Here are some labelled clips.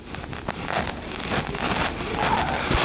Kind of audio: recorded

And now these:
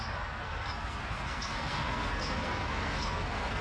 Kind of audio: remade